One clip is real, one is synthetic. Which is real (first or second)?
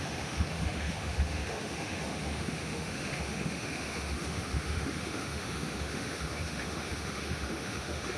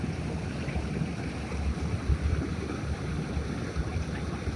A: second